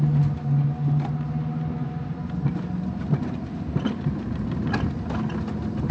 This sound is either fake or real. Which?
real